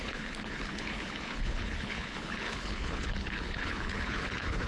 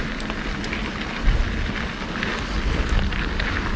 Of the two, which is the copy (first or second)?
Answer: first